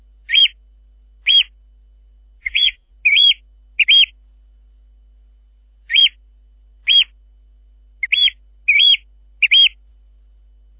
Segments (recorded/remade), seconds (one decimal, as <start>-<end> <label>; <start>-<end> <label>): 0.0-2.4 recorded; 2.4-2.9 remade; 2.9-10.8 recorded